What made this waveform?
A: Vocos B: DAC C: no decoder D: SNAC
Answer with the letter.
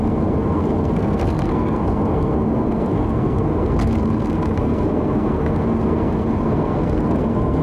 D